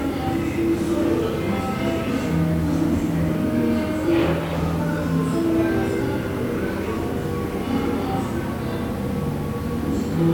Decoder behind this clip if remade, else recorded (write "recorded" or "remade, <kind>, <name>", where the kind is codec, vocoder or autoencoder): recorded